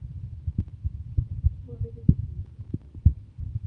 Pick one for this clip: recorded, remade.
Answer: recorded